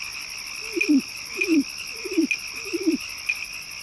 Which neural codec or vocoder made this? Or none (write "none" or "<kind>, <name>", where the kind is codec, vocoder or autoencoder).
none